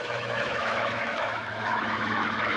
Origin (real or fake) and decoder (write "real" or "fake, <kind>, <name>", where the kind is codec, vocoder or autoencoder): fake, autoencoder, DAC-VAE